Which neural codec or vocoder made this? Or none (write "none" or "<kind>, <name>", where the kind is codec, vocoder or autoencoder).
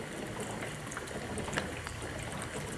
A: none